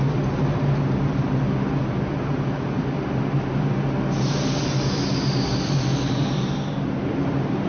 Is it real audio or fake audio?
real